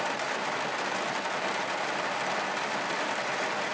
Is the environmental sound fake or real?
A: real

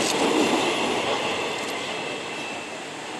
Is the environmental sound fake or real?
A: real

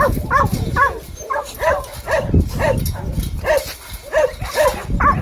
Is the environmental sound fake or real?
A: real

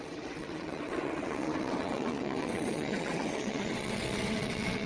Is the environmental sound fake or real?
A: fake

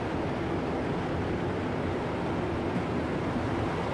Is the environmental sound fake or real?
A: real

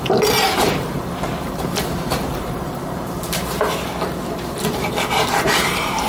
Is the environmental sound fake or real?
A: fake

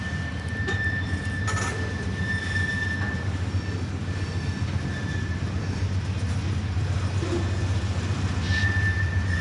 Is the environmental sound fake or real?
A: real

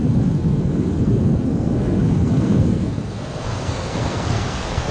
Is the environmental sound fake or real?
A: fake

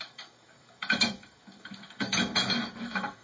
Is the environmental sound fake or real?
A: fake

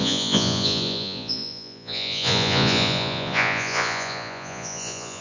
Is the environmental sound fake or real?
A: fake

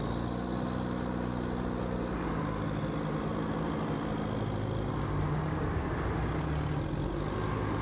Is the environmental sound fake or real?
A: real